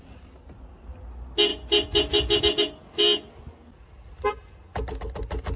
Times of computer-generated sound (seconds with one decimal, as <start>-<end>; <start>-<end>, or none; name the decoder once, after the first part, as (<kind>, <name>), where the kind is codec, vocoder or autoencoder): none